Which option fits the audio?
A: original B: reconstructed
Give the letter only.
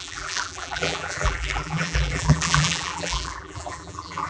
B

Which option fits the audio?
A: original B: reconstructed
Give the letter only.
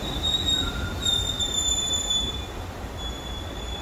A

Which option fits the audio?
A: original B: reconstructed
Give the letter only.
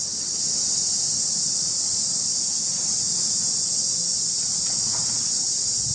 A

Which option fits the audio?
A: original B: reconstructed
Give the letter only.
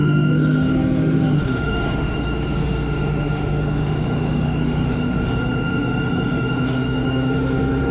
B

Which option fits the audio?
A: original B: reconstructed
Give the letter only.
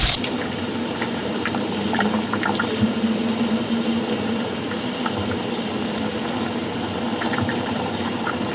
B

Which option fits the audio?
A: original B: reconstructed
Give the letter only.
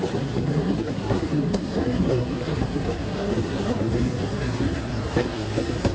B